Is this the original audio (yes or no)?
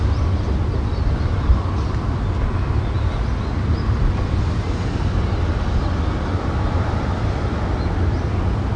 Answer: yes